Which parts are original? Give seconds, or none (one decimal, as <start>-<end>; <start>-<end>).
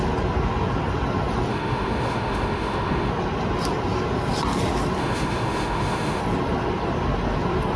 0.0-1.5; 3.1-5.0; 6.2-7.8